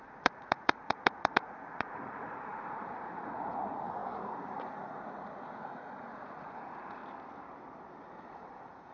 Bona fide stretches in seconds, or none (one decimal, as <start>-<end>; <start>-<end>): 7.0-8.0